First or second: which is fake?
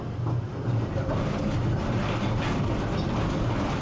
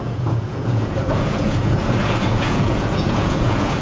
second